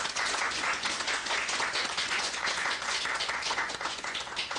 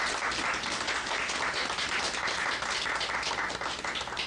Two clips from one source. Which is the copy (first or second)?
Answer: first